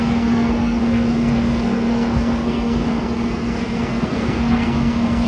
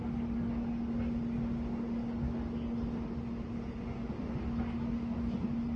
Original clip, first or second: second